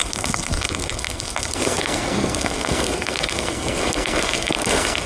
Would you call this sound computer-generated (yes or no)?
yes